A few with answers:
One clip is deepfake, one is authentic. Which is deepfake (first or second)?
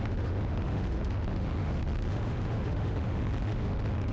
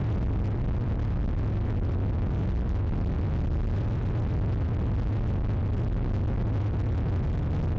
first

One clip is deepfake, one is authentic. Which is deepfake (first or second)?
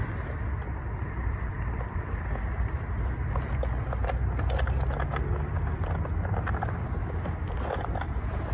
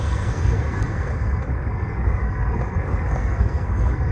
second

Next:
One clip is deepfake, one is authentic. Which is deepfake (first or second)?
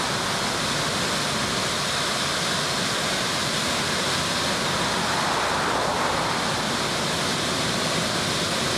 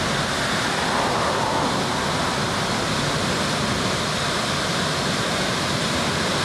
second